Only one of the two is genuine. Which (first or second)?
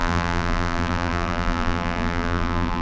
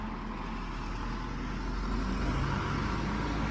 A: second